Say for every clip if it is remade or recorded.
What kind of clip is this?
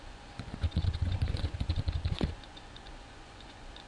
remade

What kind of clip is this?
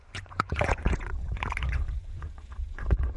remade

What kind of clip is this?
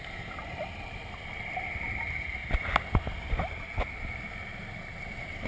recorded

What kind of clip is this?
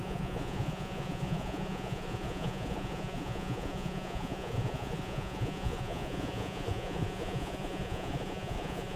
remade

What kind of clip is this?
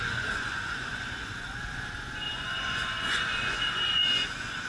remade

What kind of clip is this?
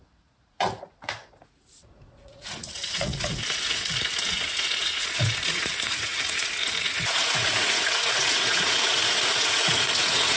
remade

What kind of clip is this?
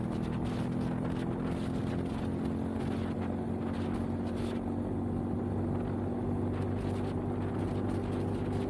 recorded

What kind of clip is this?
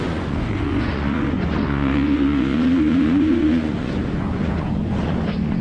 remade